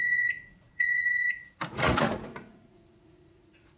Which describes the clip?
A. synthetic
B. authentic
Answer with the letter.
A